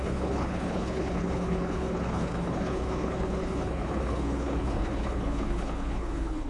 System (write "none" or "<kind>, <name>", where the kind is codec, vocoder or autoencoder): codec, HILCodec